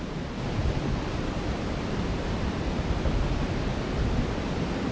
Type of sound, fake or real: real